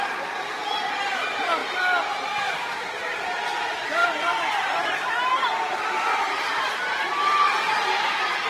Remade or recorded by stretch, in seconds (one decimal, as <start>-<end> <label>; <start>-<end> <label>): 0.0-1.6 remade; 1.6-2.4 recorded; 2.4-8.5 remade